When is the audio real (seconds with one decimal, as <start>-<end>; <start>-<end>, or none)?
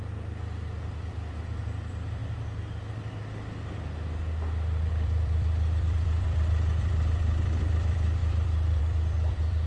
0.0-1.1; 2.2-4.9